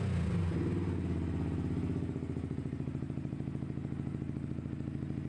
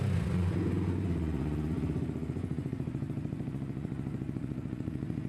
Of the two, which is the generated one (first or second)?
second